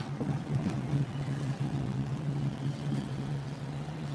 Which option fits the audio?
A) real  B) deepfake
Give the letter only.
B